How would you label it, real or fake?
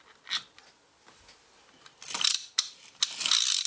real